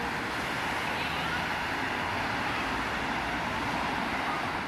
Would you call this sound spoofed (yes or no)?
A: no